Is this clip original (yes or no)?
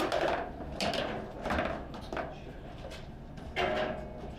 yes